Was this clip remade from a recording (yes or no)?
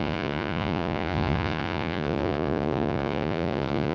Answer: yes